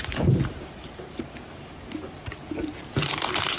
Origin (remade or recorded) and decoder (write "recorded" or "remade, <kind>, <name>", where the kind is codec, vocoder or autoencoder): remade, vocoder, BigVGAN v2